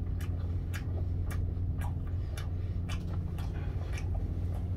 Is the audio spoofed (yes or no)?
no